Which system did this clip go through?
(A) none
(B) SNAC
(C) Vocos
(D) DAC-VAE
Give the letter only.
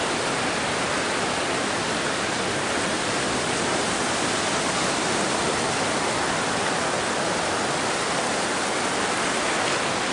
A